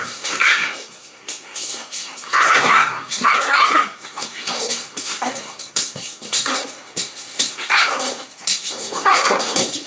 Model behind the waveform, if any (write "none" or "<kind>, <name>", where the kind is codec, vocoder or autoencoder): codec, SNAC